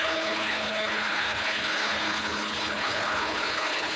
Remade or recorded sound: remade